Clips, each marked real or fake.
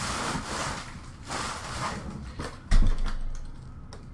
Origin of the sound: real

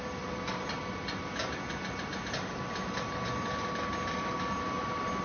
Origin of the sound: real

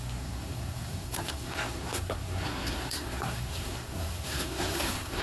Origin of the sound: fake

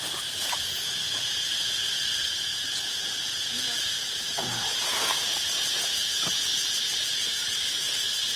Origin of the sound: fake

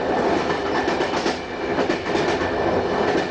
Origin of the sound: real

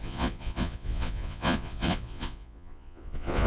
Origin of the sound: fake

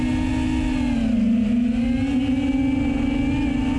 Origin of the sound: real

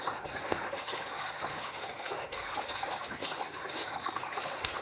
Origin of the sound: fake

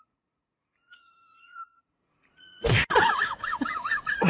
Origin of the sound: fake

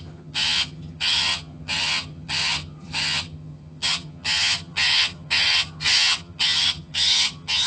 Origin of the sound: fake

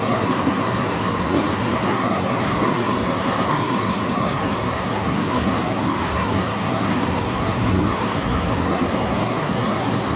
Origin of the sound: fake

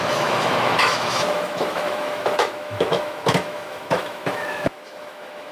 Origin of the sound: fake